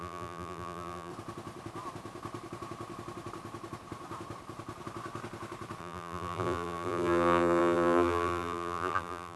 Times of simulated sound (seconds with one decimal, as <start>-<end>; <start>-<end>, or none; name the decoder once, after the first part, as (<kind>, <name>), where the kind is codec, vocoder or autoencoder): 0.0-1.1 (vocoder, BigVGAN v2); 5.8-9.4